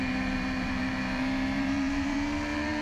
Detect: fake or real fake